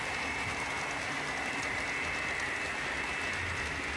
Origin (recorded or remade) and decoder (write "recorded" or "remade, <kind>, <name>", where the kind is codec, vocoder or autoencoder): recorded